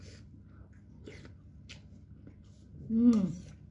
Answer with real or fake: real